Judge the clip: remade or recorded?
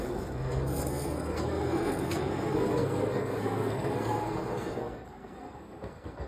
remade